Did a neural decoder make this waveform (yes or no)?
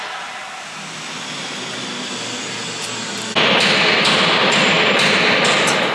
no